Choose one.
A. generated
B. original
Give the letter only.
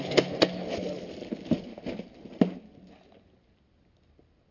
B